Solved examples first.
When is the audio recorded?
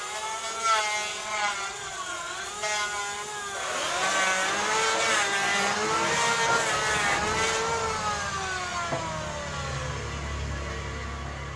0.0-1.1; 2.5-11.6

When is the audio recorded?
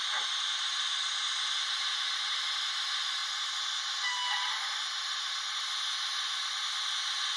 0.0-7.4